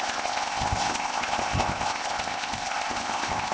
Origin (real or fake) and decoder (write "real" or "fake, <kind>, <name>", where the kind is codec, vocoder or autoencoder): fake, codec, ZipCodec